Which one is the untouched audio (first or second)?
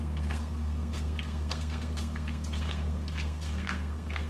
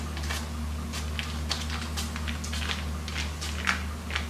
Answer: second